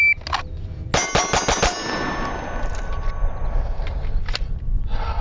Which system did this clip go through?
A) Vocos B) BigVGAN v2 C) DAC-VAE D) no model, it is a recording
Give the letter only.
D